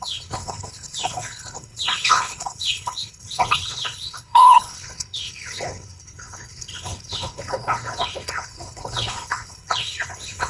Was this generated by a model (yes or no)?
yes